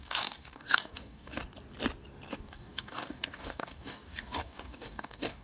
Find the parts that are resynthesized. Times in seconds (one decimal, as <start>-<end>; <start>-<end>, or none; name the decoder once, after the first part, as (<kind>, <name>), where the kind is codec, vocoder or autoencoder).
0.0-1.4 (codec, DAC); 2.3-5.4